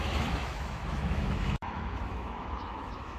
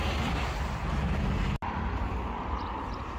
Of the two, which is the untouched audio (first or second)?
second